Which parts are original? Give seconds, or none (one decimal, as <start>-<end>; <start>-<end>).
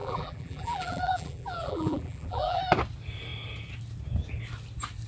2.6-5.1